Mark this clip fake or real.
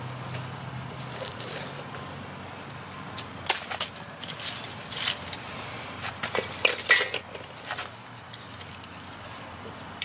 real